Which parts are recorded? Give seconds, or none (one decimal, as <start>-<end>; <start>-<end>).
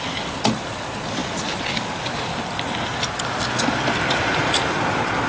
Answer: 0.0-5.3